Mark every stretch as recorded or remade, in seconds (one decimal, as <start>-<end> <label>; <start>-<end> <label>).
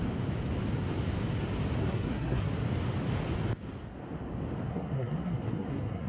0.0-1.8 recorded; 1.8-2.5 remade; 2.5-4.7 recorded; 4.7-6.1 remade